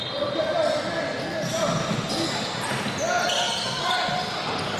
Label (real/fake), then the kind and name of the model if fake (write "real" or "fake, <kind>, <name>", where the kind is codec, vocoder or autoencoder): real